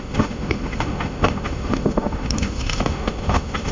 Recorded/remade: remade